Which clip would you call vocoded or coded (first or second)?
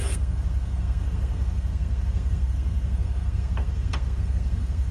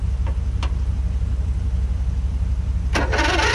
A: first